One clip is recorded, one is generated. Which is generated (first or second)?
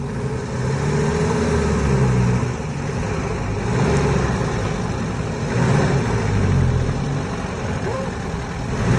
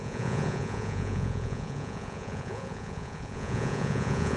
second